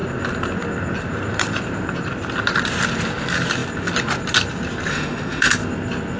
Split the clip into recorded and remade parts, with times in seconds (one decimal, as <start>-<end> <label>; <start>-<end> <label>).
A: 0.0-4.9 recorded; 4.9-5.5 remade; 5.5-6.2 recorded